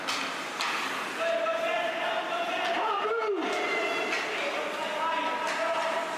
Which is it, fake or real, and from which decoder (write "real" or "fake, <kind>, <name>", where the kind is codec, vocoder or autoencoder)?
real